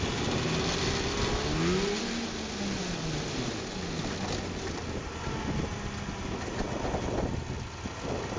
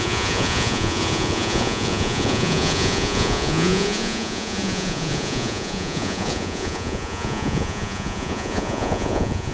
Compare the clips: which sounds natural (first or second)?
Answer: first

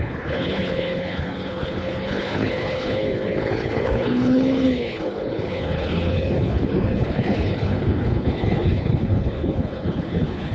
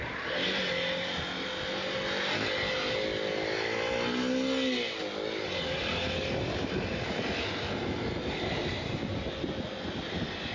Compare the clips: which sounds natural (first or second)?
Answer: second